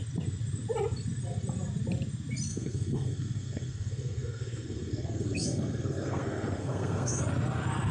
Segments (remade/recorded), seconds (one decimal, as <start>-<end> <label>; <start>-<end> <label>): 0.0-2.5 recorded; 2.5-7.2 remade; 7.2-7.9 recorded